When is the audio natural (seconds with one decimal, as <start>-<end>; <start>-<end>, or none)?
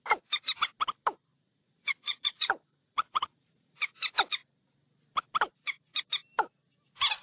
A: 0.0-1.3; 4.0-7.2